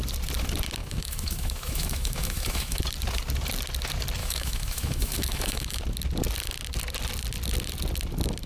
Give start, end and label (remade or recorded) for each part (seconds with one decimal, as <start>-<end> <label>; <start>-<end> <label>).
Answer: 0.0-0.8 recorded; 0.8-2.8 remade; 2.8-4.2 recorded; 4.2-5.8 remade; 5.8-8.5 recorded